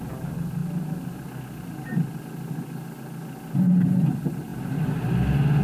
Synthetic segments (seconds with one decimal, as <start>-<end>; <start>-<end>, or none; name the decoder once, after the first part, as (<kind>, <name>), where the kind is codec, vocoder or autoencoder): none

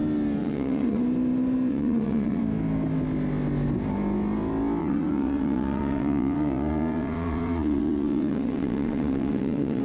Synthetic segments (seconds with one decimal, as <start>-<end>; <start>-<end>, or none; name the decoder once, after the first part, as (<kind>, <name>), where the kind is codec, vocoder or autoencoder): 0.4-1.0 (vocoder, WaveNeXt); 1.7-2.4; 4.8-9.8